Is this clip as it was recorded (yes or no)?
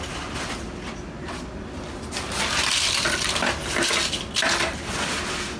yes